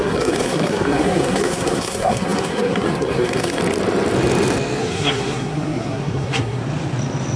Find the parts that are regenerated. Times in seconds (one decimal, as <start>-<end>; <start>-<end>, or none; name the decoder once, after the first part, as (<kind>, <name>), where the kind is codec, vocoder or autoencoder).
0.0-3.6 (codec, SNAC); 4.8-6.6